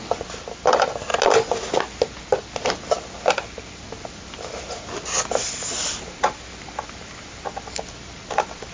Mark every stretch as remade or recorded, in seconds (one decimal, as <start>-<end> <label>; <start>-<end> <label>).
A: 0.0-8.7 recorded